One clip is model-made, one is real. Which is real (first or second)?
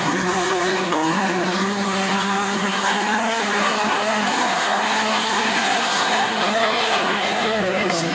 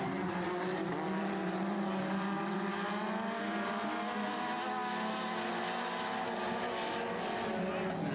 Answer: second